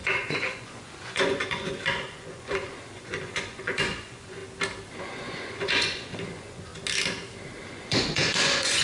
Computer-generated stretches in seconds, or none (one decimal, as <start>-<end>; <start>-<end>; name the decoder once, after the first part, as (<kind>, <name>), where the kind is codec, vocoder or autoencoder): 0.0-4.4 (vocoder, Vocos); 5.0-6.7; 7.7-8.8